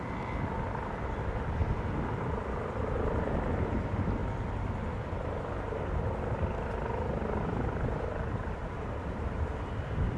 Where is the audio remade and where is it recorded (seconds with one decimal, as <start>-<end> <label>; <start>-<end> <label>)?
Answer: 0.0-4.2 remade; 4.2-8.5 recorded; 8.5-10.2 remade